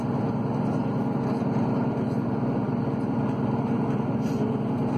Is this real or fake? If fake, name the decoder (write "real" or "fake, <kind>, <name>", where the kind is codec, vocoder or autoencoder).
real